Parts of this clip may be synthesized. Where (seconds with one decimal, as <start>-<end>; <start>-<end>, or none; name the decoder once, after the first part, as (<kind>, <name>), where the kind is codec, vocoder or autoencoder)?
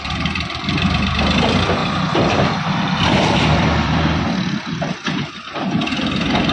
0.0-6.5 (vocoder, BigVGAN v2)